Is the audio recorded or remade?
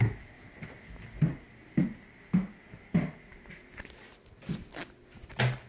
recorded